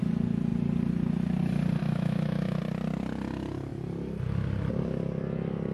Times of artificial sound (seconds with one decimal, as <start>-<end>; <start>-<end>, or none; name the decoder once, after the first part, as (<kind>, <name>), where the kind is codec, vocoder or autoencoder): 1.8-2.6 (autoencoder, DAC-VAE)